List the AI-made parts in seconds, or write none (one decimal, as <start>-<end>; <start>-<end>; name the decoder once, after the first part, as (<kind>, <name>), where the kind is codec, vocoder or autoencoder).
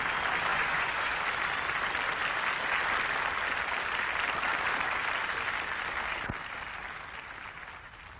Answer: 0.5-1.2 (vocoder, Vocos)